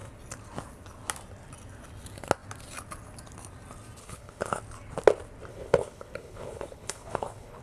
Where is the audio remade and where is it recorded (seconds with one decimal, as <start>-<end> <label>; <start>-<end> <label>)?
0.0-4.0 recorded; 4.0-4.6 remade; 4.6-5.5 recorded; 5.5-7.6 remade